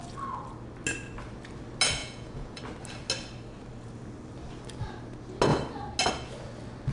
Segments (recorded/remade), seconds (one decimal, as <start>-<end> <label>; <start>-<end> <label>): 0.0-2.0 recorded; 2.0-2.6 remade; 2.6-6.9 recorded